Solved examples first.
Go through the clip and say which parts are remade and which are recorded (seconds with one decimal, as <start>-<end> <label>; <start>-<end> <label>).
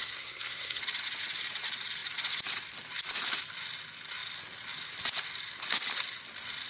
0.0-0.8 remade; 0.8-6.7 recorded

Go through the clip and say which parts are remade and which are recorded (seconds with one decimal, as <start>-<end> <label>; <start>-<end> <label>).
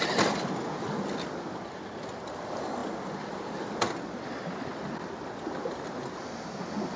0.0-7.0 recorded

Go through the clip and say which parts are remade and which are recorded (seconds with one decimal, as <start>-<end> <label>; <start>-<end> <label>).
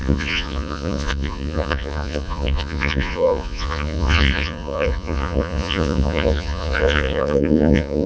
0.0-8.1 remade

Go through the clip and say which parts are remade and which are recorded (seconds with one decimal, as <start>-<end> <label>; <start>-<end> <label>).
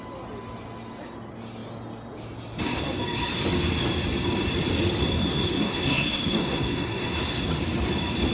0.0-5.0 recorded; 5.0-7.2 remade; 7.2-8.3 recorded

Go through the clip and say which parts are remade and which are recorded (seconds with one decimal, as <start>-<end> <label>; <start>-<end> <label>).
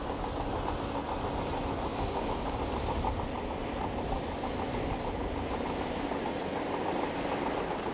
0.0-7.9 recorded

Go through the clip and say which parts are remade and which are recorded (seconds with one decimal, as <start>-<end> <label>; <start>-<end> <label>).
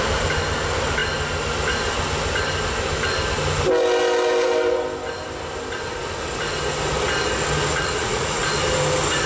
0.0-7.7 recorded; 7.7-8.4 remade; 8.4-9.3 recorded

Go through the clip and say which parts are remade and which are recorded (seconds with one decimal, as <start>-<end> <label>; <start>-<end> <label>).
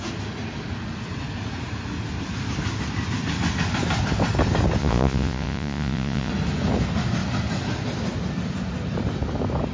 0.0-4.8 recorded; 4.8-6.3 remade; 6.3-9.7 recorded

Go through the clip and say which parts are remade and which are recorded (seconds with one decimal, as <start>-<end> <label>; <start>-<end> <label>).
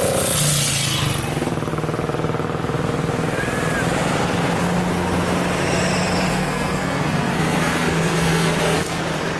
0.0-6.3 recorded; 6.3-9.0 remade; 9.0-9.4 recorded